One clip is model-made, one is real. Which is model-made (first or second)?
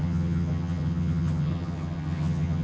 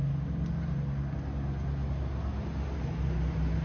first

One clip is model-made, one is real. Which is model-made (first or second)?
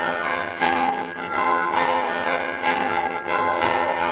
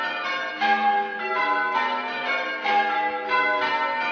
first